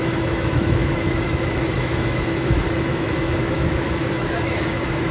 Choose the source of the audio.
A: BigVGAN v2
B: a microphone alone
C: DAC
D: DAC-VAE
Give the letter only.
D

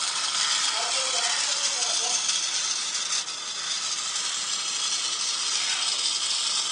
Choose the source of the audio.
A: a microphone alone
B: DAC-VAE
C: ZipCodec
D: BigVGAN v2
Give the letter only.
A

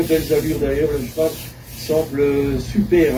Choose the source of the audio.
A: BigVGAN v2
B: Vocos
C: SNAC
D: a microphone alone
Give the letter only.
D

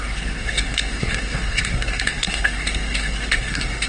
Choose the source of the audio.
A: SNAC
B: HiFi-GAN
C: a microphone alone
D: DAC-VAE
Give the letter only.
A